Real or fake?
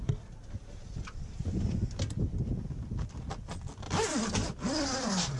real